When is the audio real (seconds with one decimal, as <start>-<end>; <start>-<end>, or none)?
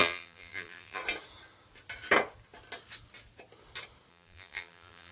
1.0-4.1